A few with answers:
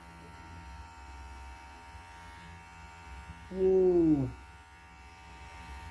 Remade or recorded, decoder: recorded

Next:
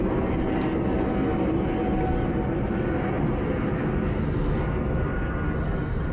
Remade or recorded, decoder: recorded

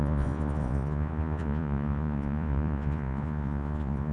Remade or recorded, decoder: remade, vocoder, Vocos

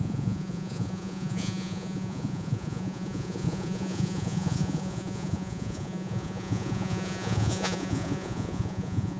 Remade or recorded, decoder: remade, vocoder, Vocos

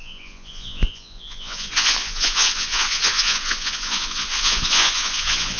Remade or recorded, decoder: remade, vocoder, Vocos